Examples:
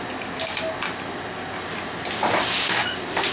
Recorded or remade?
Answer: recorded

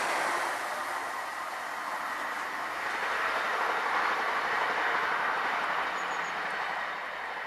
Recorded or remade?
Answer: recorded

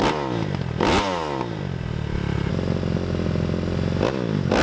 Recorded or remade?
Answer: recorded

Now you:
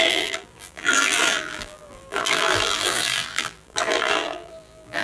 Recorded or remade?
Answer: remade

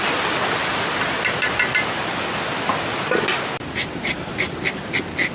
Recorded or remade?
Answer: recorded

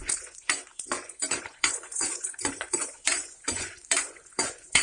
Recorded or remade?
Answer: remade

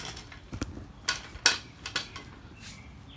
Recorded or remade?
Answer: recorded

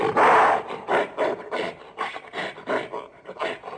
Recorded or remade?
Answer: recorded